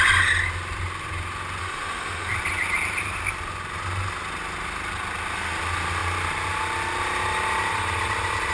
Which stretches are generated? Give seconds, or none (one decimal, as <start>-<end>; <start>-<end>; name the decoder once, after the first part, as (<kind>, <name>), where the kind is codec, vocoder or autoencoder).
1.6-2.3 (autoencoder, DAC-VAE)